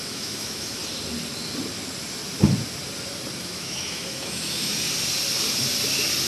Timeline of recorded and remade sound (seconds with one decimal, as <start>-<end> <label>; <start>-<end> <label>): 0.0-0.8 remade; 0.8-3.4 recorded; 3.4-4.7 remade; 4.7-6.3 recorded